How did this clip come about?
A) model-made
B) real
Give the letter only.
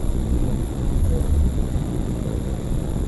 A